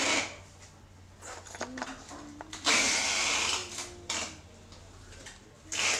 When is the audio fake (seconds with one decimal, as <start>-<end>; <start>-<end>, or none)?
none